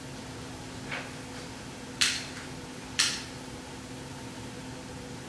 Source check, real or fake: real